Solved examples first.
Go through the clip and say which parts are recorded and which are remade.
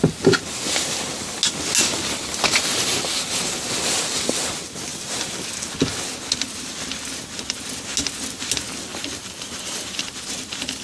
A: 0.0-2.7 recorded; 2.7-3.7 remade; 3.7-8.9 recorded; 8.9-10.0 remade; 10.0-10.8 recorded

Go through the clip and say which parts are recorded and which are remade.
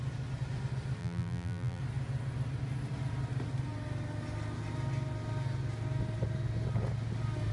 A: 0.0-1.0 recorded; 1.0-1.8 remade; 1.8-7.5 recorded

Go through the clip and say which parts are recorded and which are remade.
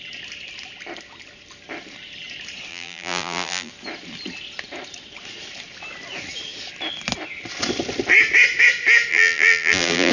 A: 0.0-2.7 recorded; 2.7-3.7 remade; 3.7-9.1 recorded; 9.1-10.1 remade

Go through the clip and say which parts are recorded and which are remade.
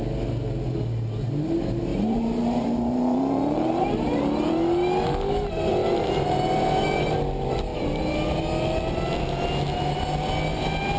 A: 0.0-1.9 recorded; 1.9-4.5 remade; 4.5-5.8 recorded; 5.8-7.0 remade; 7.0-7.7 recorded; 7.7-8.4 remade; 8.4-11.0 recorded